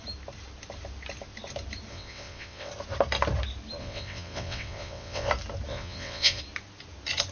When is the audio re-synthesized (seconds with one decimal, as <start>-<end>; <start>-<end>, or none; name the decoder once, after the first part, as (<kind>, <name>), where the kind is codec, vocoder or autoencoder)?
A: 1.9-2.7 (vocoder, WaveNeXt); 3.8-5.3; 5.7-6.4

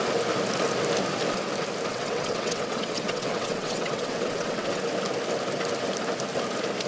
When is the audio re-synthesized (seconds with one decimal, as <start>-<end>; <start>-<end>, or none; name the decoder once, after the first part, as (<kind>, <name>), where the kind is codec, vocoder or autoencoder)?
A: 1.9-4.8 (vocoder, WaveNeXt)

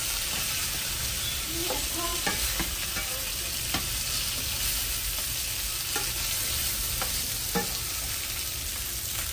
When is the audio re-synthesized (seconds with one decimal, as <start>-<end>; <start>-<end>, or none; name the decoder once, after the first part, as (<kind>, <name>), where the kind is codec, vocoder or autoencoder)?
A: 0.0-0.7 (vocoder, BigVGAN v2)

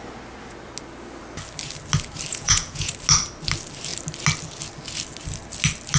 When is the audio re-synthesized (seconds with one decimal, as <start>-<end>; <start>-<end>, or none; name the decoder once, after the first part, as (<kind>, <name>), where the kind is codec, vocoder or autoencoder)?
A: 2.3-2.9 (vocoder, Vocos)